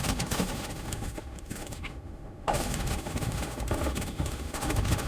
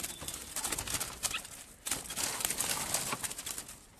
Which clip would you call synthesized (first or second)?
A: first